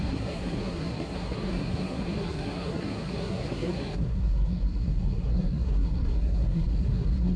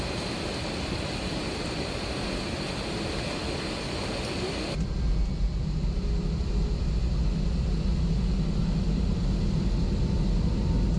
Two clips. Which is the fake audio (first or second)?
first